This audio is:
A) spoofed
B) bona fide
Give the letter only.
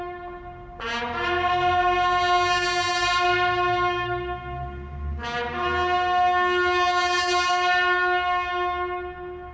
B